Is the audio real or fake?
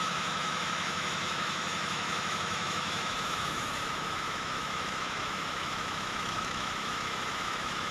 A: fake